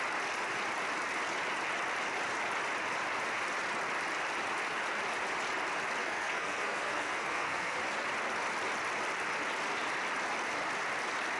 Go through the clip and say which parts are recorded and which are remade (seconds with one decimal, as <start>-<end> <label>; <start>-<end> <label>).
0.0-6.0 recorded; 6.0-7.8 remade; 7.8-11.4 recorded